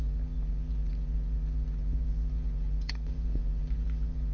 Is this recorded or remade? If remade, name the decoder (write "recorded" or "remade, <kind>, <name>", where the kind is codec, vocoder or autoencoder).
remade, vocoder, Vocos